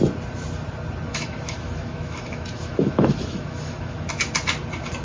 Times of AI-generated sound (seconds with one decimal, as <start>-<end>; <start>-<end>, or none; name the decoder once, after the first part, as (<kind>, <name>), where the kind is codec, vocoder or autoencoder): 1.1-4.1 (autoencoder, DAC-VAE)